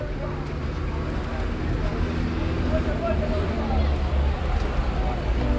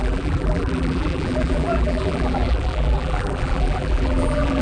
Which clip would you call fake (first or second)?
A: second